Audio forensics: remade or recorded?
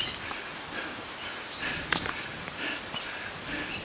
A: recorded